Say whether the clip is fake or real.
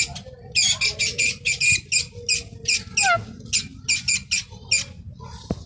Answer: real